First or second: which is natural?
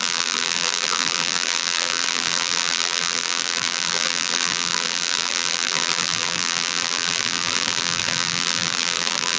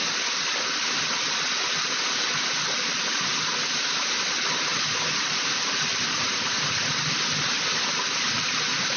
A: second